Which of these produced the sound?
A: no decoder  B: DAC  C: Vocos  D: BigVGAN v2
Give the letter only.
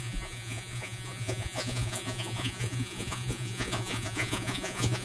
C